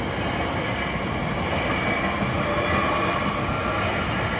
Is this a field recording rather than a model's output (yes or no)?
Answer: yes